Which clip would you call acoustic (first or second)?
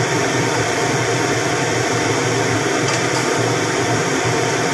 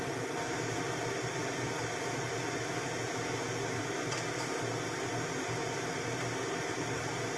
second